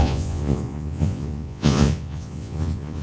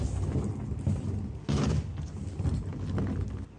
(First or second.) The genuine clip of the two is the second